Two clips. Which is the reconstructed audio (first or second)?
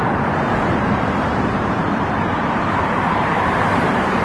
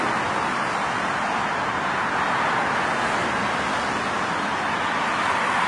first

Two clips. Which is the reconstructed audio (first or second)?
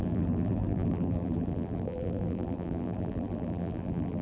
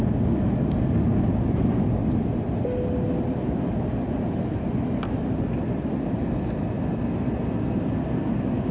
first